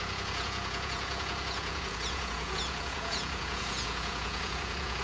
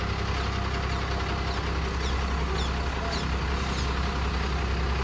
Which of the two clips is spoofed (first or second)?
first